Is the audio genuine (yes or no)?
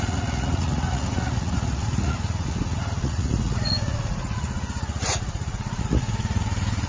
no